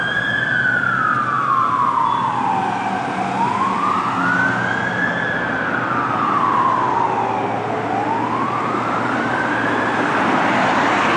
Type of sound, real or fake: real